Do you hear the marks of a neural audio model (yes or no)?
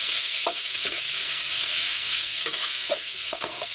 yes